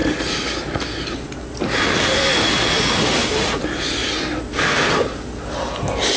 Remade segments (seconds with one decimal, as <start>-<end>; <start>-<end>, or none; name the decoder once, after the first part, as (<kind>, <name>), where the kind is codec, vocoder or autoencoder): none